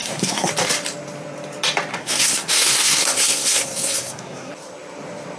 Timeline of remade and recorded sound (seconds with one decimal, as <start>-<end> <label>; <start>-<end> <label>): 0.0-0.5 remade; 0.5-1.9 recorded; 1.9-4.5 remade; 4.5-5.4 recorded